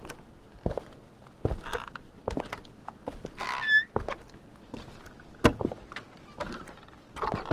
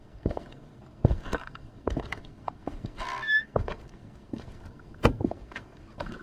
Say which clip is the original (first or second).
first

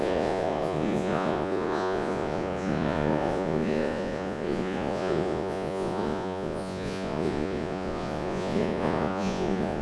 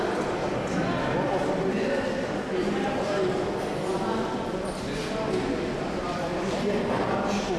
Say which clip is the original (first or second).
second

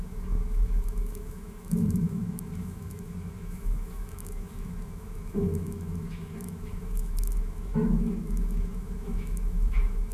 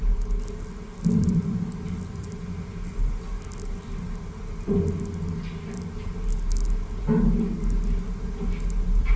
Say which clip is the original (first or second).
second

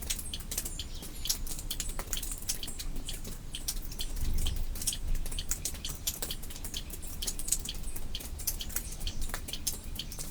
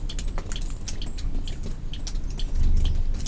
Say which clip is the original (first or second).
second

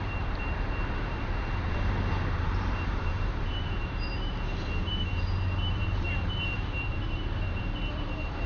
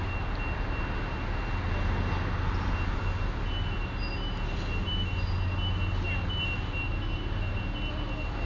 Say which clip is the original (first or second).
second